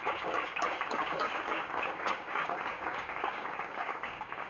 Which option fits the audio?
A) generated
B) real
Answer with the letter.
A